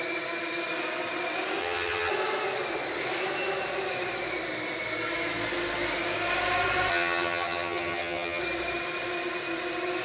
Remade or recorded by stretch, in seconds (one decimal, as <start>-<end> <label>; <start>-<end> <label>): 0.0-1.6 recorded; 1.6-2.1 remade; 2.1-6.9 recorded; 6.9-8.4 remade; 8.4-10.0 recorded